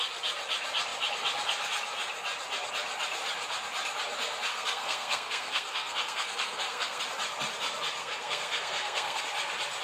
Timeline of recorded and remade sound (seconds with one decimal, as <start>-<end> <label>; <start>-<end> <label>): 0.0-4.5 recorded; 4.5-7.0 remade; 7.0-8.0 recorded; 8.0-9.2 remade; 9.2-9.8 recorded